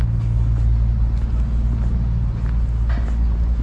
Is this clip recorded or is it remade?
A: recorded